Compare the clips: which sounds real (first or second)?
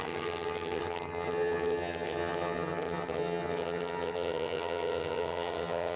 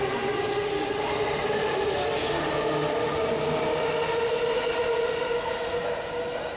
second